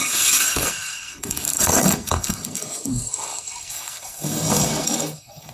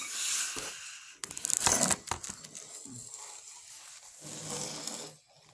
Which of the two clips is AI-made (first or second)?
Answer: first